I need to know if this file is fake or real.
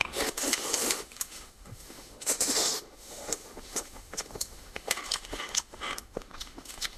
fake